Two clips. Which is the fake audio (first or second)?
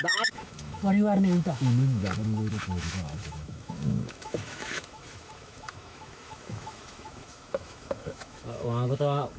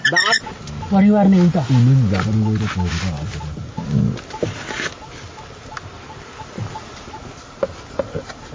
first